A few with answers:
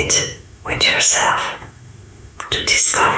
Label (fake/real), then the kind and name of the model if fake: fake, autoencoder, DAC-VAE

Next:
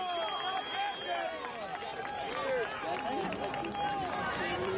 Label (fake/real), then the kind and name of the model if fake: real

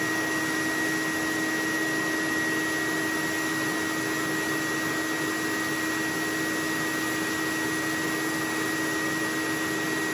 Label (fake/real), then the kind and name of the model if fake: real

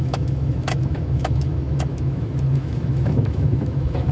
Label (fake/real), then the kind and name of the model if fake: fake, autoencoder, DAC-VAE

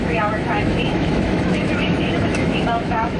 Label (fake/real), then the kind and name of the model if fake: fake, autoencoder, DAC-VAE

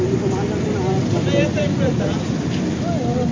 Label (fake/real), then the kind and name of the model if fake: real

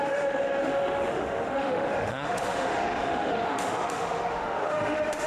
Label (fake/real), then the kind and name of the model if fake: fake, autoencoder, DAC-VAE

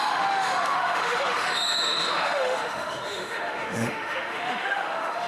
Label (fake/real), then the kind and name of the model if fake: fake, autoencoder, DAC-VAE